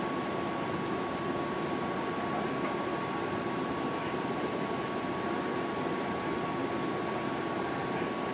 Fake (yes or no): no